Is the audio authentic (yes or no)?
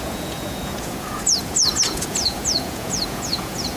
no